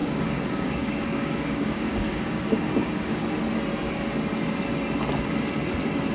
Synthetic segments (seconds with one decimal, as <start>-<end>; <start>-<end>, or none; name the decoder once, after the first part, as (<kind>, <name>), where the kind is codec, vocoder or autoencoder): 0.0-3.2 (codec, DAC)